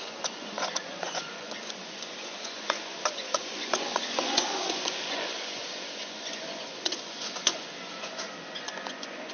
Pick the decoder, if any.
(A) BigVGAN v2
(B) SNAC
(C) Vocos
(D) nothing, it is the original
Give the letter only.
C